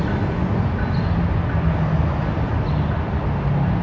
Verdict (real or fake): real